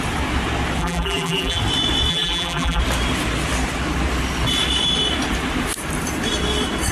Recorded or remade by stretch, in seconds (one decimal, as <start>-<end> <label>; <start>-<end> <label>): 0.0-0.8 recorded; 0.8-1.6 remade; 1.6-2.1 recorded; 2.1-2.8 remade; 2.8-6.9 recorded